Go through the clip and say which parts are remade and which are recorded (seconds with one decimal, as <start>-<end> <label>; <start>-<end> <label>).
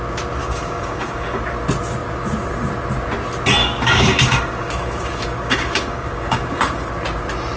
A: 0.0-0.4 recorded; 0.4-1.4 remade; 1.4-3.6 recorded; 3.6-6.9 remade; 6.9-7.6 recorded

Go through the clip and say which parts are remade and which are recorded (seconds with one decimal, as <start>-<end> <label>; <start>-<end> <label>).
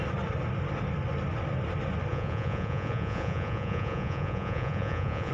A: 0.0-2.1 recorded; 2.1-5.3 remade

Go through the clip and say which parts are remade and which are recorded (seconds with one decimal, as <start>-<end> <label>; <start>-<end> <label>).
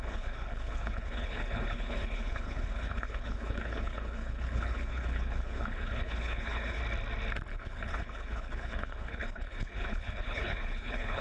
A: 0.0-6.8 remade; 6.8-7.5 recorded; 7.5-11.2 remade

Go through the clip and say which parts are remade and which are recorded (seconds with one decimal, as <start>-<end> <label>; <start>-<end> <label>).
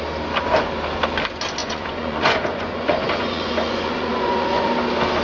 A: 0.0-1.6 recorded; 1.6-4.7 remade; 4.7-5.2 recorded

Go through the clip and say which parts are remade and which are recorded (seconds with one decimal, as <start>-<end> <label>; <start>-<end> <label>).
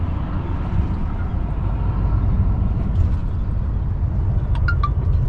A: 0.0-5.3 recorded